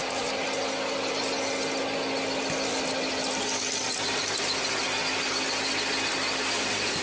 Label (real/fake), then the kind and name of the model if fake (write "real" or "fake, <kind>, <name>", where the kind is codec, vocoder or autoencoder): real